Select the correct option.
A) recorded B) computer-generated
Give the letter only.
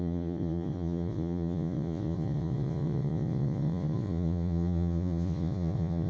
B